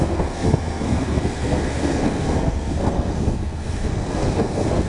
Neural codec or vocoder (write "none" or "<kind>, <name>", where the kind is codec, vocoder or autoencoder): codec, SNAC